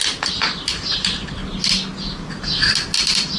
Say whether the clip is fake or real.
real